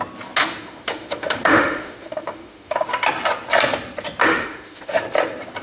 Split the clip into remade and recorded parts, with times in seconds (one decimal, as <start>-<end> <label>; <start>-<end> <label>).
0.0-0.4 recorded; 0.4-2.9 remade; 2.9-4.3 recorded; 4.3-5.0 remade; 5.0-5.6 recorded